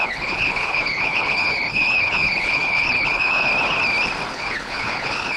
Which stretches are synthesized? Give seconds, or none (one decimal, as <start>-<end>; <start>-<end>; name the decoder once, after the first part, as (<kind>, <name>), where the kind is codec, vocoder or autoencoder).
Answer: 0.0-3.5 (codec, HILCodec); 4.3-5.4